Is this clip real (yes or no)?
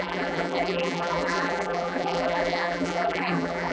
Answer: no